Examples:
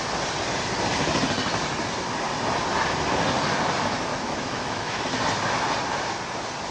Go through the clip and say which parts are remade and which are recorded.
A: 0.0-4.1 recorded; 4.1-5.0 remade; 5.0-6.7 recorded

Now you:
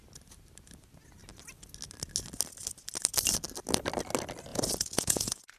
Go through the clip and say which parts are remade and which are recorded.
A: 0.0-4.5 recorded; 4.5-5.6 remade

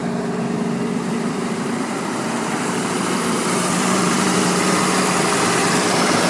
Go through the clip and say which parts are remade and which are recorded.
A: 0.0-1.3 recorded; 1.3-6.3 remade